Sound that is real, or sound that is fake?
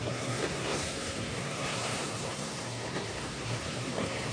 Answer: fake